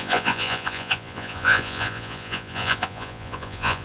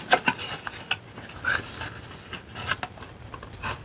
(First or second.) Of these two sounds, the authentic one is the second